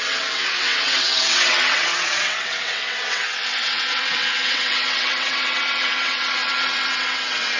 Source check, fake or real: fake